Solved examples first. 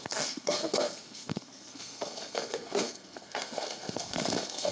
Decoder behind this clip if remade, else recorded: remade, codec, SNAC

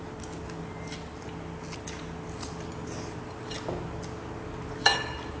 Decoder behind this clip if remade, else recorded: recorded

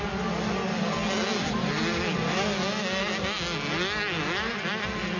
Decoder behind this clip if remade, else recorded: recorded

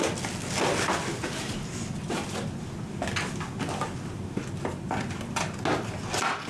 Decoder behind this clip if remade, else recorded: recorded